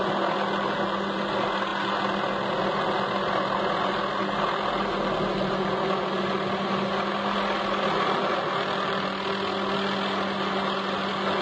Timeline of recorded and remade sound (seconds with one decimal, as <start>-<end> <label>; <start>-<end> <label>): 0.0-11.4 recorded